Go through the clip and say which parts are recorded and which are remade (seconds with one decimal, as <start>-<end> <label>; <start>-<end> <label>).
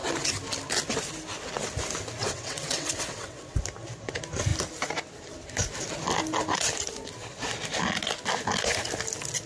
0.0-2.2 recorded; 2.2-3.6 remade; 3.6-9.5 recorded